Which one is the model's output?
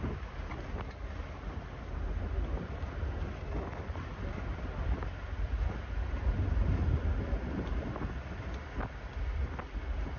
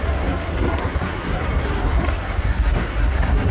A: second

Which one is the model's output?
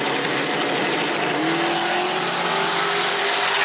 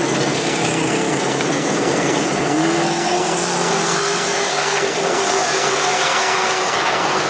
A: second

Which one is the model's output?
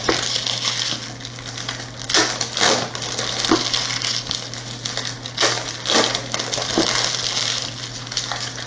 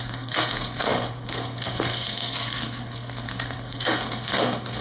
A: second